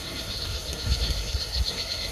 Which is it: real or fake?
fake